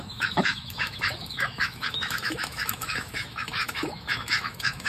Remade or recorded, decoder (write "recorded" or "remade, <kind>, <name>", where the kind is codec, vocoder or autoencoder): remade, autoencoder, DAC-VAE